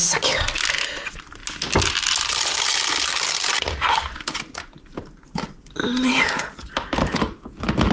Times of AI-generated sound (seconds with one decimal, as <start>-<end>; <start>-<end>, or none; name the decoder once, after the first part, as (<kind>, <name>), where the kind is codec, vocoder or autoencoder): none